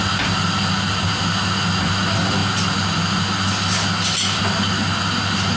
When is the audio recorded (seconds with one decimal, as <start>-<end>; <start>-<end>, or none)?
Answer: 0.0-5.6